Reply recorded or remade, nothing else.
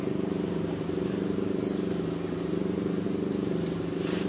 remade